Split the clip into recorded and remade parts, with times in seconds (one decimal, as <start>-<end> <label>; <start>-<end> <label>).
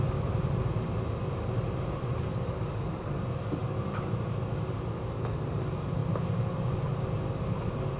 0.0-2.3 recorded; 2.3-3.2 remade; 3.2-8.0 recorded